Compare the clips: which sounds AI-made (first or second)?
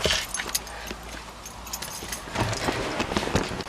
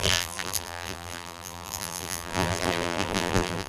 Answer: second